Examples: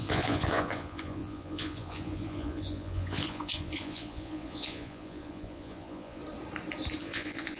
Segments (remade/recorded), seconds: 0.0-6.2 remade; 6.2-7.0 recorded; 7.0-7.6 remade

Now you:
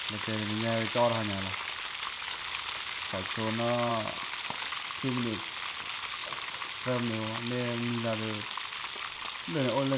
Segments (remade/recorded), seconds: 0.0-10.0 recorded